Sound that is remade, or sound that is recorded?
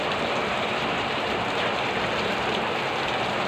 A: recorded